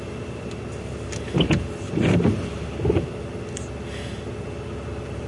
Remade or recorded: recorded